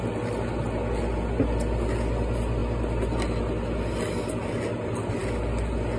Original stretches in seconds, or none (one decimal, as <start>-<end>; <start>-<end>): 0.0-6.0